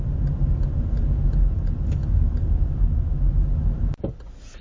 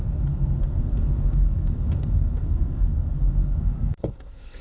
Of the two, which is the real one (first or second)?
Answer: first